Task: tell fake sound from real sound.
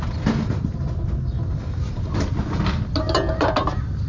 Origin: real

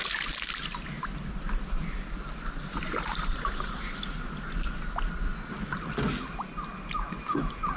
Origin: real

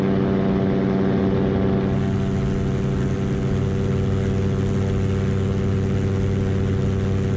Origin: real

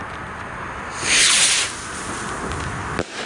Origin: real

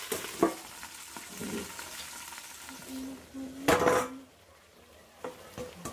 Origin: real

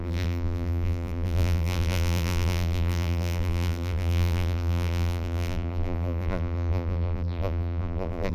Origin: fake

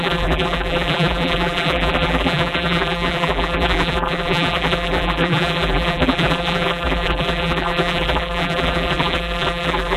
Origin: fake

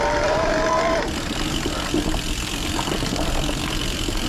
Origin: fake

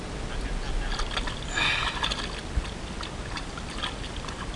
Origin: real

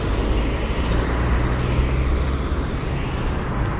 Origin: real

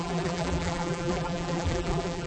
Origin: fake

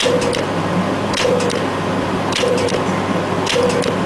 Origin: real